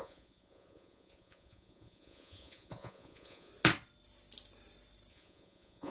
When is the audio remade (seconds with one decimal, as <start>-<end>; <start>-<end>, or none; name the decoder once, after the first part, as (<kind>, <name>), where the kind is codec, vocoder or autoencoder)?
0.0-3.5 (vocoder, Vocos); 5.1-5.9